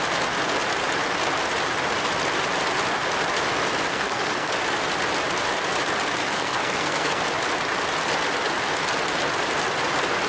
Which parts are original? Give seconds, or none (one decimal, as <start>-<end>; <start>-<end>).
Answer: 0.0-3.9; 4.5-6.2; 7.2-10.3